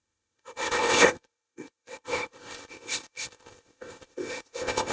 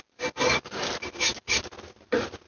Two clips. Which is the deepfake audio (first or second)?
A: first